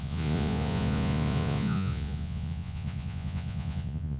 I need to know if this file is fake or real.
fake